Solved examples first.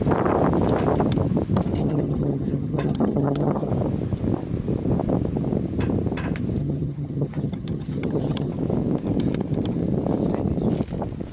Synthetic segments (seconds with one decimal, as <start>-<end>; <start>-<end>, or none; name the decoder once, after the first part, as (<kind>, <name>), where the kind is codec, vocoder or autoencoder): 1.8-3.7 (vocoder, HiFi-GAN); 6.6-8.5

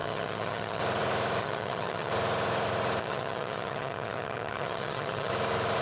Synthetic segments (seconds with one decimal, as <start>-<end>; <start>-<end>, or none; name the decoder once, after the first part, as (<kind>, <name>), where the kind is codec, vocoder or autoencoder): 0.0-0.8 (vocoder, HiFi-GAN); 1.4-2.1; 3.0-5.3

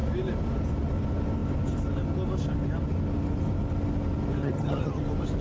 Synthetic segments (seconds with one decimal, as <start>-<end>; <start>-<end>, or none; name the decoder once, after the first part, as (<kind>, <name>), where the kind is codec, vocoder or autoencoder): 4.4-5.0 (vocoder, HiFi-GAN)

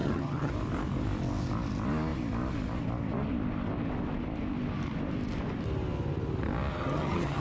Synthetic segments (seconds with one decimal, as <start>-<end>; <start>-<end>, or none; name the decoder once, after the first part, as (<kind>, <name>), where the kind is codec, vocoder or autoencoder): 0.0-0.5 (vocoder, HiFi-GAN); 6.7-7.4

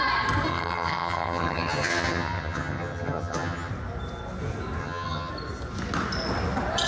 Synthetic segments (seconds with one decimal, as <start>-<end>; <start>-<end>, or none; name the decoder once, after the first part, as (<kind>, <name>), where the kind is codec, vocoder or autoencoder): 0.5-3.7 (vocoder, HiFi-GAN); 4.8-5.3

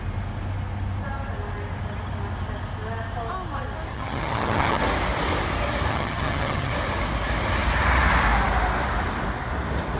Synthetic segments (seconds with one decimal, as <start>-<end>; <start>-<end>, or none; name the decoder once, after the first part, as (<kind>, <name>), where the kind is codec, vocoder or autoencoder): 3.9-4.8 (vocoder, HiFi-GAN); 5.9-6.7